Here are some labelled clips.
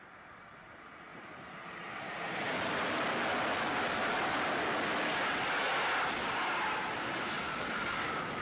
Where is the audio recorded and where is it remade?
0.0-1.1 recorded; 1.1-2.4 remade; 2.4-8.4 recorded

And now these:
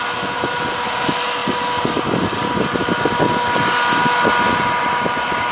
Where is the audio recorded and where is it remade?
0.0-5.5 recorded

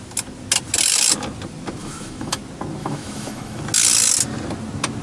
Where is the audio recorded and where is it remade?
0.0-1.8 recorded; 1.8-2.4 remade; 2.4-2.8 recorded; 2.8-3.6 remade; 3.6-5.0 recorded

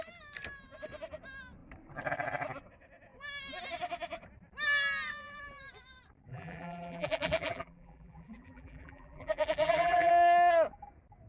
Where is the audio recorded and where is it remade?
0.0-6.3 recorded; 6.3-10.1 remade; 10.1-11.3 recorded

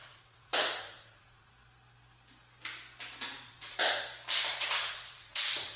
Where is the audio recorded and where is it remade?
0.0-1.5 remade; 1.5-3.3 recorded; 3.3-4.0 remade; 4.0-4.5 recorded; 4.5-5.8 remade

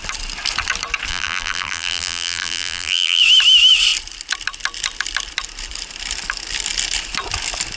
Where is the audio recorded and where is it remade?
0.0-1.1 recorded; 1.1-3.2 remade; 3.2-7.8 recorded